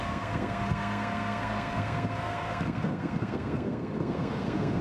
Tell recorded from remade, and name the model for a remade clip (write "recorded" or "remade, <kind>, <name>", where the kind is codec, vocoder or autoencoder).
remade, codec, SNAC